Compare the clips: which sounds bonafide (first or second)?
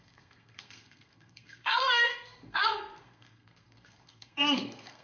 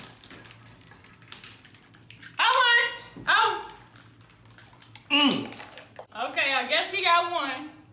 second